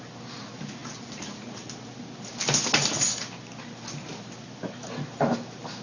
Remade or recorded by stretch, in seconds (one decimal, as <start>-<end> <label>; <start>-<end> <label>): 0.0-5.8 recorded